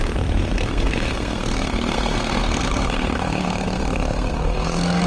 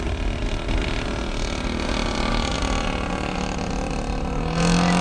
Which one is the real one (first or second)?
second